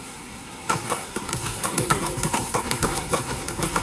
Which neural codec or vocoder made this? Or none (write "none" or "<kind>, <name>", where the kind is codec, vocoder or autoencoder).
codec, SNAC